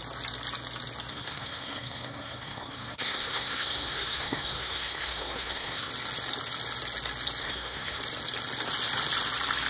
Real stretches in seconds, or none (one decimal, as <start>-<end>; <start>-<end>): 0.0-1.1; 5.9-7.4; 8.0-9.7